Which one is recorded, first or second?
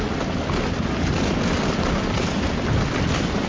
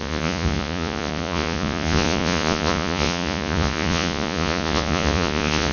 first